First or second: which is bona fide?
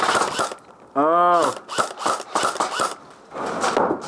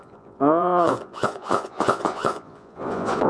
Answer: first